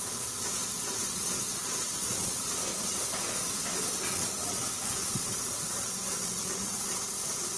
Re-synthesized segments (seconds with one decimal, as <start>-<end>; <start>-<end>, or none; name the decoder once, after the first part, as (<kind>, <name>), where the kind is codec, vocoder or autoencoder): 0.0-7.6 (vocoder, Vocos)